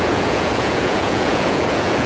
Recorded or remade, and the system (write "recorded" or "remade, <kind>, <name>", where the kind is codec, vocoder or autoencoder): remade, vocoder, Vocos